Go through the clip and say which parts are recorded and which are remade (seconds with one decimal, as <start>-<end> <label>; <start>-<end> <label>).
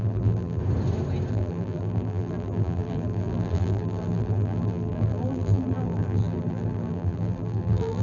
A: 0.0-0.6 remade; 0.6-1.3 recorded; 1.3-8.0 remade